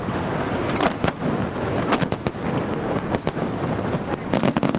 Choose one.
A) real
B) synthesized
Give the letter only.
A